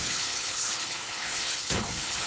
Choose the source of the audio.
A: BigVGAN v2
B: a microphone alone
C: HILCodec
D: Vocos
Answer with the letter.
C